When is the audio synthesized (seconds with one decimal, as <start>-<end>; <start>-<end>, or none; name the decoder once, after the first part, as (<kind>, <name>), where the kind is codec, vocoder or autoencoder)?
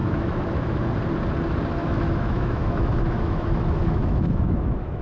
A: 0.0-0.9 (autoencoder, DAC-VAE); 1.8-5.0